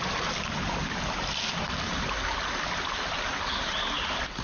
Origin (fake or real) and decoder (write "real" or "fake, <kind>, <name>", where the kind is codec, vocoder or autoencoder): real